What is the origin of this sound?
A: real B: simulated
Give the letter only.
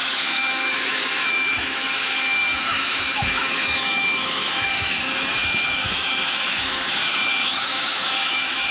B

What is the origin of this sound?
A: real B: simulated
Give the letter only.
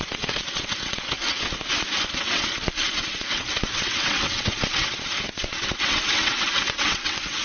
B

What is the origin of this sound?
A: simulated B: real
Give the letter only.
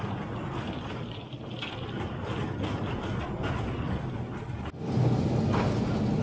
B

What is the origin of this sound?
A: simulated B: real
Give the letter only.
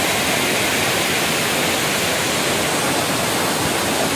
B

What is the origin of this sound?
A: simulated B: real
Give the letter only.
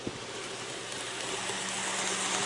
B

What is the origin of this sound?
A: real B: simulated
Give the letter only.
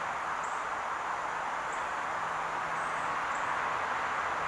A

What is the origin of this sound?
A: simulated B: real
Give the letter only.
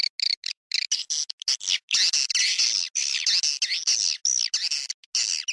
B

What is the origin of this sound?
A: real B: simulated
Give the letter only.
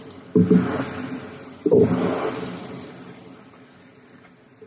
A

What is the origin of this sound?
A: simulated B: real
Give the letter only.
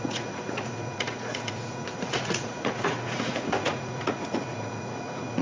A